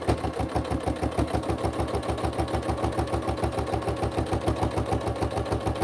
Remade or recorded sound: recorded